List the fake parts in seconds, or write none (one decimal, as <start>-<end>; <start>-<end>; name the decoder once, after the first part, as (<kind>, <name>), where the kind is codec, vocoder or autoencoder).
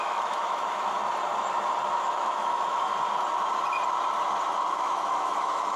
0.0-1.0 (autoencoder, DAC-VAE); 1.9-2.9; 4.8-5.8